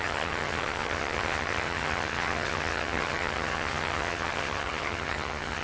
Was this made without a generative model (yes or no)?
no